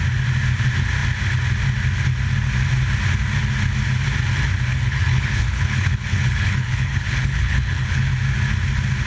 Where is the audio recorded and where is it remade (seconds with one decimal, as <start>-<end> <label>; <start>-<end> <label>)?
0.0-4.7 recorded; 4.7-8.0 remade; 8.0-9.1 recorded